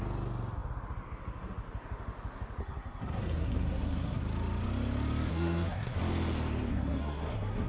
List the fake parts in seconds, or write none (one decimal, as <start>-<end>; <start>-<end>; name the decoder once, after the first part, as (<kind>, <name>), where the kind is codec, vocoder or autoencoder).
2.6-4.2 (codec, SNAC); 5.3-6.0; 6.7-7.7